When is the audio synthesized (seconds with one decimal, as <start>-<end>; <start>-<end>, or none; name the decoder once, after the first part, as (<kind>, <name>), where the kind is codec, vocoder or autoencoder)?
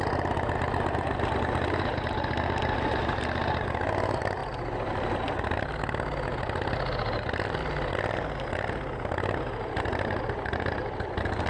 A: none